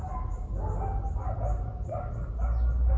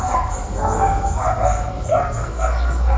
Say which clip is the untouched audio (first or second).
first